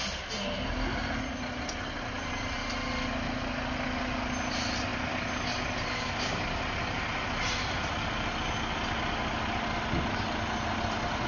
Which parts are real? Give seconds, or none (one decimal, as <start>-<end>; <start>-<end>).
0.0-11.3